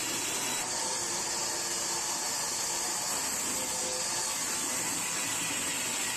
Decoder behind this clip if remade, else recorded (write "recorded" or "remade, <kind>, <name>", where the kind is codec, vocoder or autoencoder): recorded